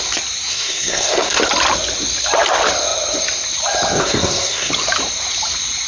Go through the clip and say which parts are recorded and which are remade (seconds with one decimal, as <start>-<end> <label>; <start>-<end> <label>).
0.0-0.5 recorded; 0.5-1.4 remade; 1.4-4.0 recorded; 4.0-4.7 remade; 4.7-5.9 recorded